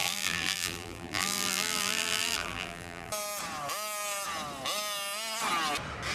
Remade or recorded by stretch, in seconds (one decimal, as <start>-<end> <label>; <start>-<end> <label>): 0.0-3.1 remade; 3.1-6.1 recorded

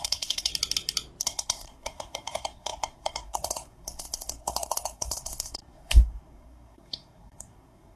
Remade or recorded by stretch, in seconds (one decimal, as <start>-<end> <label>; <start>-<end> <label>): 0.0-0.5 remade; 0.5-1.2 recorded; 1.2-8.0 remade

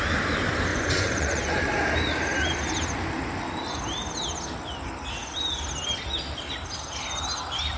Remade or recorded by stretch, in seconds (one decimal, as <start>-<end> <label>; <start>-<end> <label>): 0.0-0.7 recorded; 0.7-1.7 remade; 1.7-7.8 recorded

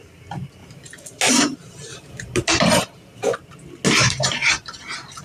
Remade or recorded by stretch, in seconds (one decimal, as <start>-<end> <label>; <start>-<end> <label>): 0.0-0.6 remade; 0.6-1.3 recorded; 1.3-1.9 remade; 1.9-2.6 recorded; 2.6-3.1 remade; 3.1-4.0 recorded; 4.0-5.2 remade

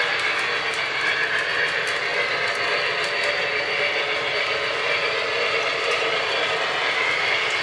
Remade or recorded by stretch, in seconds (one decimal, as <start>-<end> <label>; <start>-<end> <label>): 0.0-7.6 recorded

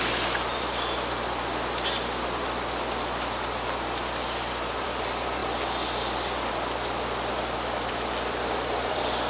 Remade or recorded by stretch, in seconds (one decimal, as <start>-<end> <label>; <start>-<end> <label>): 0.0-5.4 remade; 5.4-6.5 recorded; 6.5-9.3 remade

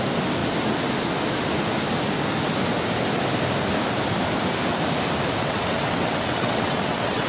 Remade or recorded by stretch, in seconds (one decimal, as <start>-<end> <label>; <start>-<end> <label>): 0.0-5.4 recorded; 5.4-7.3 remade